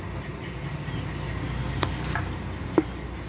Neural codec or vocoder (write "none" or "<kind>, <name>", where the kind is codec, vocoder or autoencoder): none